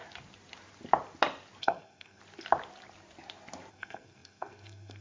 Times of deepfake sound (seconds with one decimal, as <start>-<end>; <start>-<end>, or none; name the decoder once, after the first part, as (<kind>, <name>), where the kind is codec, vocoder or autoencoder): 1.6-2.2 (codec, SNAC); 3.7-5.0